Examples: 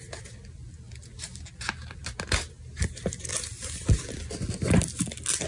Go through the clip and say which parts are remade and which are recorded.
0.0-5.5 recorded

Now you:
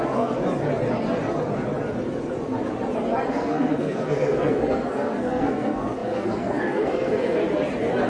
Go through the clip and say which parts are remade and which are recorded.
0.0-0.4 remade; 0.4-3.3 recorded; 3.3-7.4 remade; 7.4-8.1 recorded

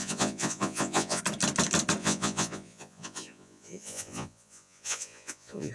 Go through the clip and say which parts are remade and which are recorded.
0.0-1.2 remade; 1.2-2.0 recorded; 2.0-5.7 remade

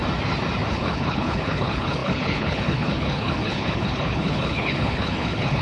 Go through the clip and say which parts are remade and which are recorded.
0.0-0.7 recorded; 0.7-5.6 remade

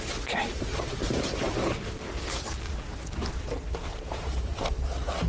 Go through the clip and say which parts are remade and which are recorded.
0.0-0.4 recorded; 0.4-1.1 remade; 1.1-3.2 recorded; 3.2-4.6 remade; 4.6-5.3 recorded

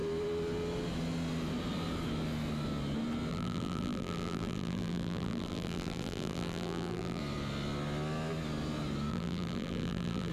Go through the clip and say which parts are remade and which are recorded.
0.0-3.3 recorded; 3.3-7.2 remade; 7.2-9.1 recorded; 9.1-10.3 remade

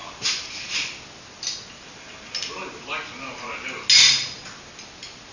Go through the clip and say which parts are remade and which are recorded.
0.0-5.3 recorded

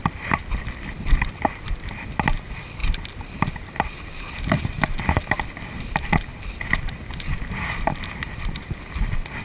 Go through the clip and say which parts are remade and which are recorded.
0.0-0.4 remade; 0.4-1.2 recorded; 1.2-9.4 remade